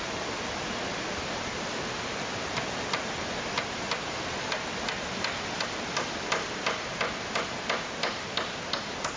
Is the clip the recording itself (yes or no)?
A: yes